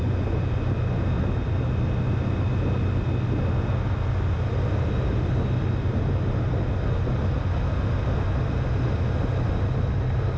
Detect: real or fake real